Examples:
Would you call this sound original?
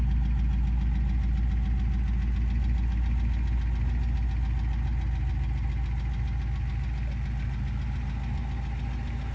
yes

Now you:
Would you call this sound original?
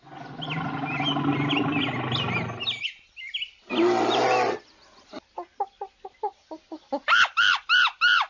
yes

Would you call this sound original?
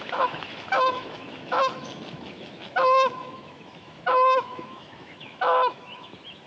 no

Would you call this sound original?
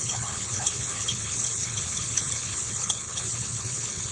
no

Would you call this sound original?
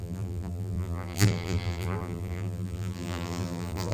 no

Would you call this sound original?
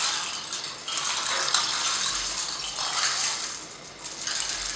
yes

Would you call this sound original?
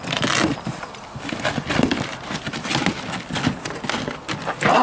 yes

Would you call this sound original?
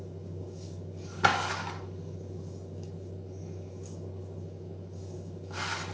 no